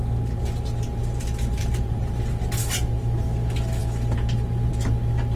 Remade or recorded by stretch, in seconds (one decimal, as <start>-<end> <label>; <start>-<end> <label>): 0.0-1.0 recorded; 1.0-2.3 remade; 2.3-5.4 recorded